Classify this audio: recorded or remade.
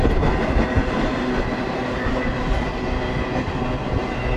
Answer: recorded